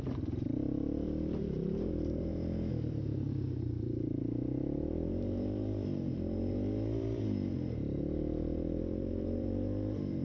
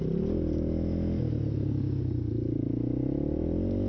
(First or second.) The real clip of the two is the second